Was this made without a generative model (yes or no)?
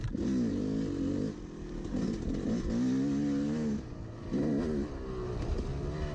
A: yes